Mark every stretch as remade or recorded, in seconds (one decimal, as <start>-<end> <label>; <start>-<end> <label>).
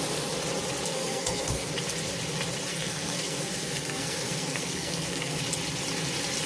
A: 0.0-0.9 recorded; 0.9-1.7 remade; 1.7-2.7 recorded; 2.7-5.4 remade; 5.4-6.5 recorded